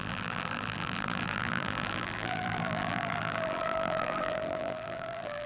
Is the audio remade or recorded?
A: remade